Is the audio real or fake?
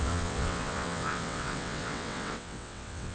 fake